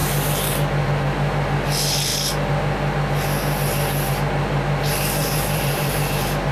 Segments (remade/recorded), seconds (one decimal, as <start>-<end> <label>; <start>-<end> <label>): 0.0-5.2 recorded; 5.2-6.5 remade